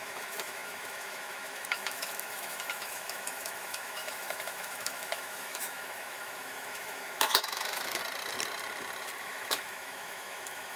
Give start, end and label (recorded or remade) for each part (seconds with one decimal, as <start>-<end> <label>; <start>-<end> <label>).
0.0-8.0 remade; 8.0-9.2 recorded; 9.2-10.8 remade